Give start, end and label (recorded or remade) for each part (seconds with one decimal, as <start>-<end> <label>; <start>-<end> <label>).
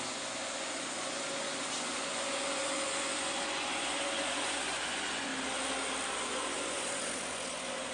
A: 0.0-5.3 remade; 5.3-6.1 recorded; 6.1-7.9 remade